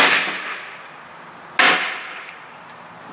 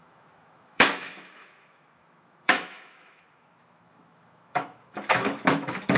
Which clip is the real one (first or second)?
first